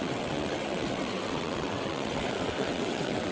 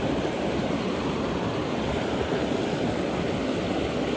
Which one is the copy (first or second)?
first